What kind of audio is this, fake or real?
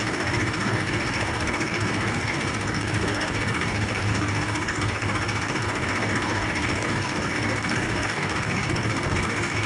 fake